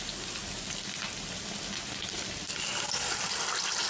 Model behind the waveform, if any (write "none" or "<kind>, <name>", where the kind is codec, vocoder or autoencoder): none